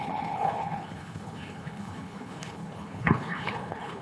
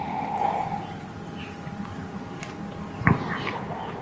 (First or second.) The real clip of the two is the second